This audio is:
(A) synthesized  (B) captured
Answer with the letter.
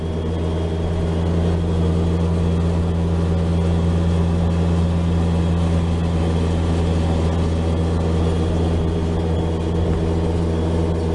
B